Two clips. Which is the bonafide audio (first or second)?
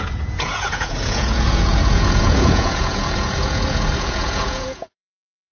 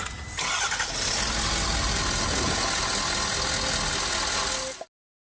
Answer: second